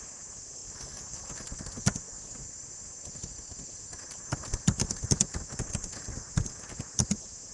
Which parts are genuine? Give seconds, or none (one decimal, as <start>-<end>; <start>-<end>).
0.0-7.5